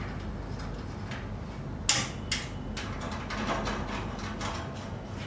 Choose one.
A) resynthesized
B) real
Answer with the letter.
B